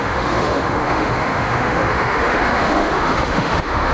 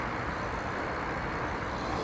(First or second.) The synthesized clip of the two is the first